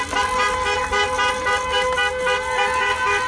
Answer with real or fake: real